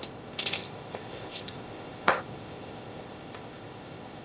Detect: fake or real fake